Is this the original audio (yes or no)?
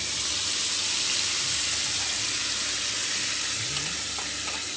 yes